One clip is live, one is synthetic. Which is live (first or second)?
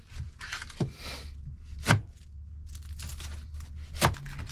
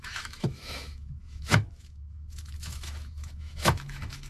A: first